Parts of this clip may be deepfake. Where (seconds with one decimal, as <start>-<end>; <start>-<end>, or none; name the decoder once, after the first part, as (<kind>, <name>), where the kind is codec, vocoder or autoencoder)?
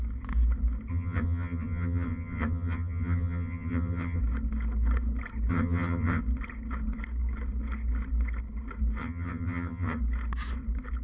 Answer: 0.9-4.2 (vocoder, HiFi-GAN); 5.5-6.2; 9.0-10.0